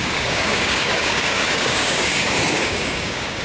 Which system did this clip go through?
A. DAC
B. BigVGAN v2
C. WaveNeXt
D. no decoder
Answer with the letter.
A